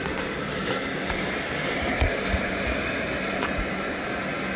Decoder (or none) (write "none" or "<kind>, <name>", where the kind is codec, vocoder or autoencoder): none